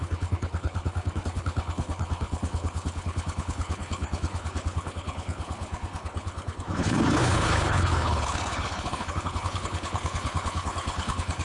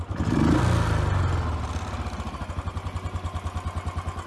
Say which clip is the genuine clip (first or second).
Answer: second